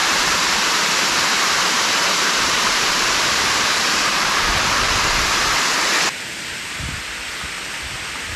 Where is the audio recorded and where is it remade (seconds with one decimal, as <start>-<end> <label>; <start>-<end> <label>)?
0.0-5.0 remade; 5.0-8.4 recorded